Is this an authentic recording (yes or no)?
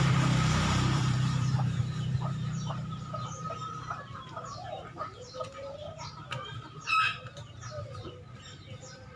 no